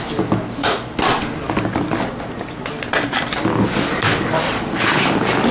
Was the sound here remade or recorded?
recorded